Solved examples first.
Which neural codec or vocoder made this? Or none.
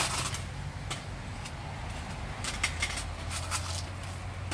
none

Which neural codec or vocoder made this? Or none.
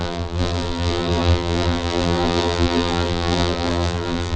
vocoder, BigVGAN v2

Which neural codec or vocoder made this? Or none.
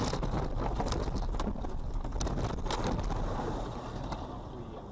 none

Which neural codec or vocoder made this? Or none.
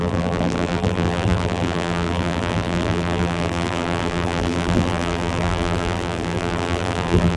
vocoder, BigVGAN v2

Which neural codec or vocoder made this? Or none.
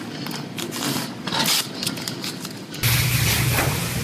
vocoder, BigVGAN v2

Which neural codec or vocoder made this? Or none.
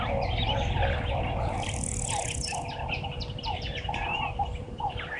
vocoder, BigVGAN v2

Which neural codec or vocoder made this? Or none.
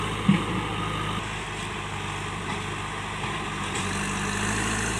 none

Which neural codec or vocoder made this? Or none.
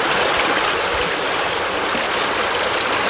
none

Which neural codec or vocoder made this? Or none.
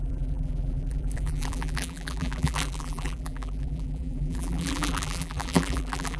vocoder, BigVGAN v2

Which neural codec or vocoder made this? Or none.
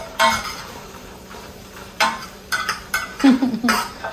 vocoder, BigVGAN v2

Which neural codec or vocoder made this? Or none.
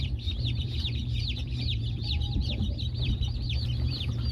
vocoder, BigVGAN v2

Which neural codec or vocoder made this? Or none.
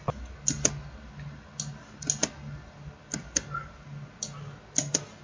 none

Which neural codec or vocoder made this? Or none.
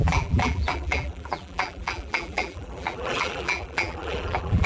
vocoder, BigVGAN v2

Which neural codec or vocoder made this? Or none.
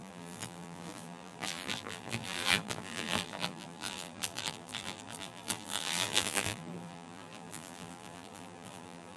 vocoder, BigVGAN v2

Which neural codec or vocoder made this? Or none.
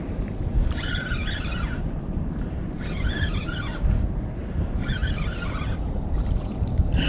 vocoder, BigVGAN v2